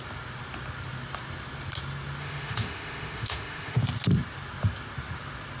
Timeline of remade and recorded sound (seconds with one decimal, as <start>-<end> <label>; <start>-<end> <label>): 0.0-2.2 recorded; 2.2-3.8 remade; 3.8-5.6 recorded